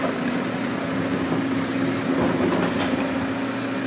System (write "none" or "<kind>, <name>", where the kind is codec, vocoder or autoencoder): none